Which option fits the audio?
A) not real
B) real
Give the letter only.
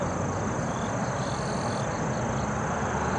B